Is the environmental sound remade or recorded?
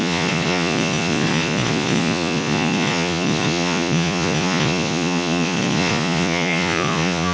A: remade